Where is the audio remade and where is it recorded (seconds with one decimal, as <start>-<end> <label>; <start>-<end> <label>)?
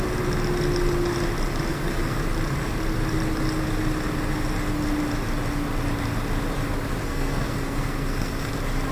0.0-1.7 recorded; 1.7-2.2 remade; 2.2-7.0 recorded; 7.0-8.5 remade; 8.5-8.9 recorded